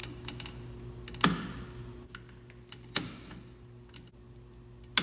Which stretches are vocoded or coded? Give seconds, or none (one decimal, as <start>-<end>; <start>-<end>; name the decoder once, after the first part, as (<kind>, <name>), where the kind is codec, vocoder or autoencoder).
none